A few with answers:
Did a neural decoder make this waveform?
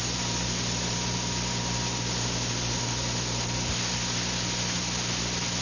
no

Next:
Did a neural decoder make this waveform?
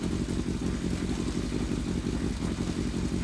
no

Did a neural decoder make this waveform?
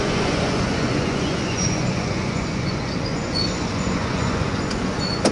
yes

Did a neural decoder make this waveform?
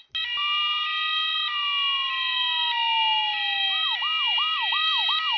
no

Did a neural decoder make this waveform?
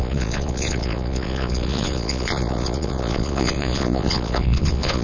yes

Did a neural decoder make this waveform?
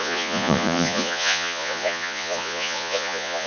yes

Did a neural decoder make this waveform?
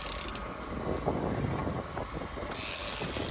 no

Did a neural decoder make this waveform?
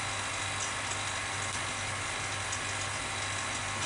no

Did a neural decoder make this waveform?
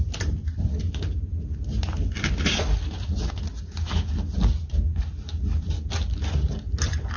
no